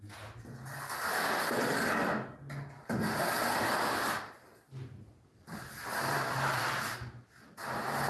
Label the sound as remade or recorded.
recorded